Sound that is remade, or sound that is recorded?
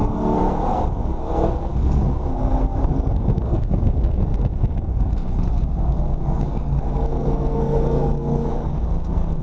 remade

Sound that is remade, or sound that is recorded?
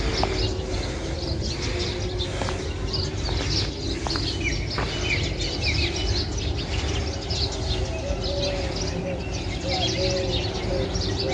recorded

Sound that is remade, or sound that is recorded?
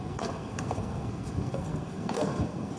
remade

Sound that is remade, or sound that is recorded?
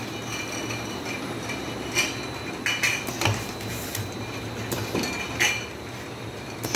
recorded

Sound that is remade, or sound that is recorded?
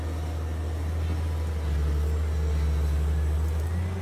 recorded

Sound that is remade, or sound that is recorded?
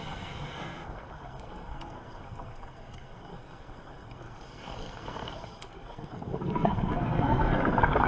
remade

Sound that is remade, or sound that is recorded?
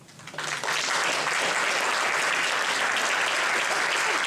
recorded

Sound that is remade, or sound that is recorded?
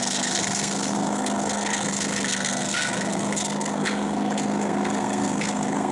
remade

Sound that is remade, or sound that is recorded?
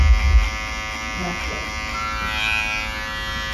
recorded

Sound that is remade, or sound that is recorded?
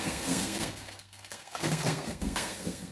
remade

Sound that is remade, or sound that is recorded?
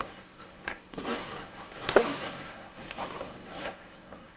remade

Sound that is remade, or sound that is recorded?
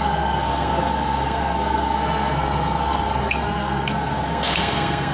remade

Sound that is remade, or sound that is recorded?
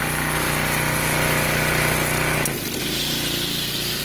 recorded